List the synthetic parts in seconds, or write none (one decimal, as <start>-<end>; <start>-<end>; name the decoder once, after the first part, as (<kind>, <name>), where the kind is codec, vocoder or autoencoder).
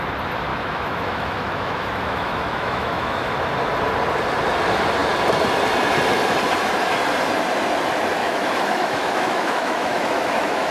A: 0.5-3.3 (autoencoder, DAC-VAE); 8.2-10.7